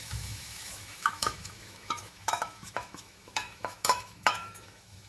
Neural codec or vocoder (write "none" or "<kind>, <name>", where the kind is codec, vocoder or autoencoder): autoencoder, DAC-VAE